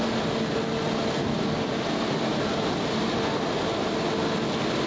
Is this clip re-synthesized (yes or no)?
no